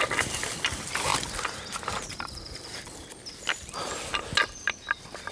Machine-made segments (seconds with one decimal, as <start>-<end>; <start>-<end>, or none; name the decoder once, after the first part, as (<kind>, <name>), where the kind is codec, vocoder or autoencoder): none